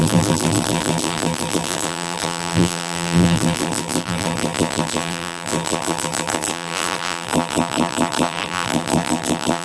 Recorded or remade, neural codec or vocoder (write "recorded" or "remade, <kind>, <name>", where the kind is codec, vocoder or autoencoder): remade, vocoder, BigVGAN v2